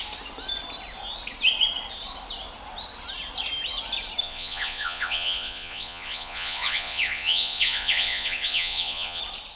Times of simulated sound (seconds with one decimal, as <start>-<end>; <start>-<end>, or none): 4.2-9.2